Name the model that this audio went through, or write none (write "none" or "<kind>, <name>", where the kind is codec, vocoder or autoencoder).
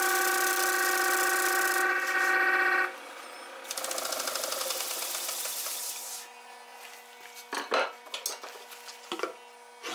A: none